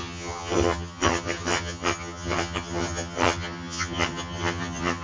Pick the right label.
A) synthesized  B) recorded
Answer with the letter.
A